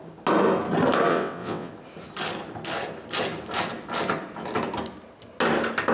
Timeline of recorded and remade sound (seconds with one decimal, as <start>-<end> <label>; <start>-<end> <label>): 0.0-1.1 recorded; 1.1-1.7 remade; 1.7-5.9 recorded